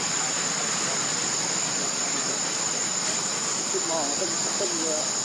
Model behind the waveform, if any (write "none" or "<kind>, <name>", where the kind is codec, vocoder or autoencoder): none